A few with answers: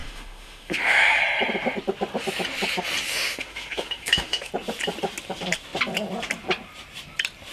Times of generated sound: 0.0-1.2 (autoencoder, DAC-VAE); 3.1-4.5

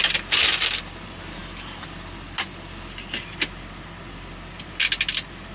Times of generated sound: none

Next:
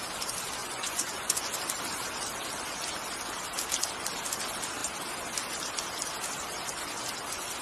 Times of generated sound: 0.6-1.5 (vocoder, Vocos)

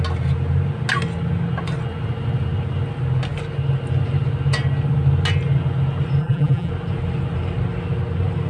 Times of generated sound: 6.2-6.7 (vocoder, BigVGAN v2)

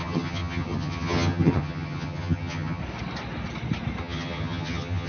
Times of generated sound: 0.0-2.8 (vocoder, HiFi-GAN); 4.0-5.1

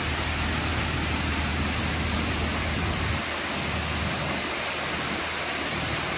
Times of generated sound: none

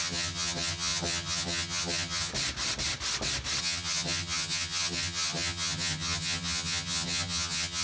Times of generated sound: 0.0-2.3 (vocoder, HiFi-GAN); 3.6-7.8